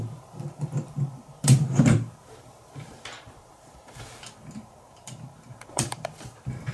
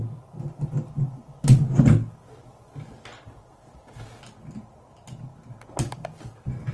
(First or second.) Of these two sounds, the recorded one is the second